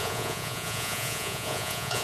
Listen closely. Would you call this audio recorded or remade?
remade